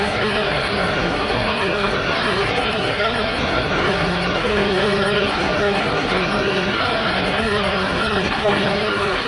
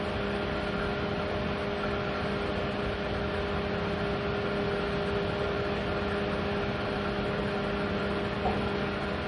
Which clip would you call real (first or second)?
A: second